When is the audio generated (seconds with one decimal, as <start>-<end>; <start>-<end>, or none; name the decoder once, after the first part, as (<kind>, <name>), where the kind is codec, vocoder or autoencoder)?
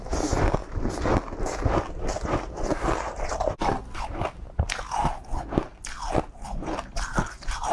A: none